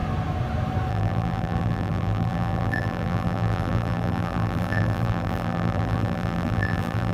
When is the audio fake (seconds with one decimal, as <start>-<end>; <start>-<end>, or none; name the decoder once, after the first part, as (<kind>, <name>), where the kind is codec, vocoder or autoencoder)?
0.9-7.1 (vocoder, BigVGAN v2)